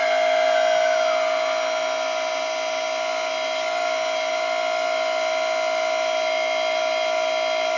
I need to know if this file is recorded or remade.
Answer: recorded